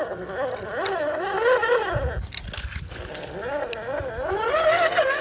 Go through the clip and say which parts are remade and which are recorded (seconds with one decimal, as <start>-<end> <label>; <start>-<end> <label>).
0.0-5.2 recorded